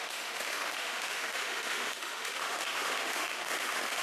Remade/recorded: remade